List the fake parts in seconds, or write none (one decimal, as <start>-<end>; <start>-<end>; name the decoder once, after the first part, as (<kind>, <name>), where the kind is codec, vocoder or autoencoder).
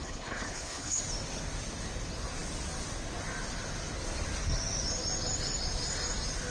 0.0-1.0 (codec, HILCodec)